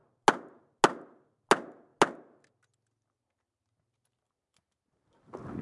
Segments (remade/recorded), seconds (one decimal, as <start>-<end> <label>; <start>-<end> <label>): 0.0-5.6 recorded